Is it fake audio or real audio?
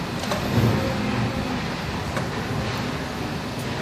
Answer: real